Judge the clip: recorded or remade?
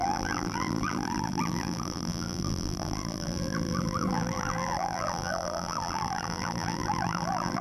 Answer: remade